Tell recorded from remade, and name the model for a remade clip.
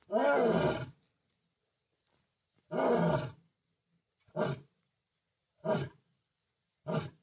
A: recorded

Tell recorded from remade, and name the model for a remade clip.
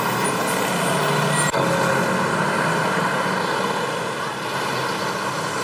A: recorded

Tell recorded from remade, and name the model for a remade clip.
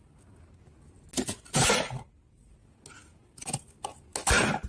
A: recorded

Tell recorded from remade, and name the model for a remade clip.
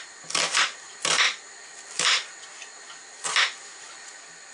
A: recorded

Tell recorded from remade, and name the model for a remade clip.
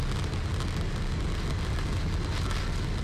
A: recorded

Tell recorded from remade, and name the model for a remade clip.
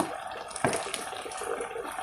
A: recorded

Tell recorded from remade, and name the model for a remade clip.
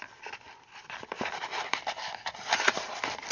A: remade, vocoder, BigVGAN v2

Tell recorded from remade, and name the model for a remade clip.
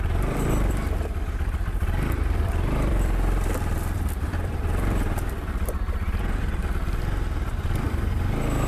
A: remade, vocoder, BigVGAN v2